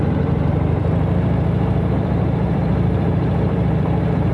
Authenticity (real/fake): fake